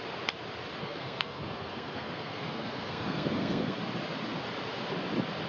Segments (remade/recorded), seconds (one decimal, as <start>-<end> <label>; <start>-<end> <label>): 0.0-0.8 recorded; 0.8-3.8 remade; 3.8-5.5 recorded